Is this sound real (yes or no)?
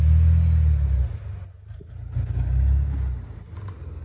yes